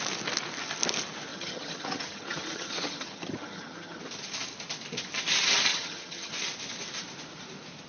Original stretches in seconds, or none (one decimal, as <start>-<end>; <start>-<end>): 0.0-1.3; 4.0-5.7; 6.3-7.9